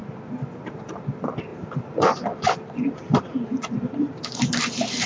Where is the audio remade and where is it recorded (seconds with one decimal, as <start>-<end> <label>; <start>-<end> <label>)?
0.0-0.7 remade; 0.7-1.5 recorded; 1.5-4.6 remade; 4.6-5.1 recorded